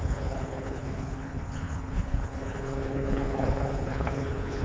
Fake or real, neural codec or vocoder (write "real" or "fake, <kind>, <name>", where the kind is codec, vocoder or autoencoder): fake, codec, HILCodec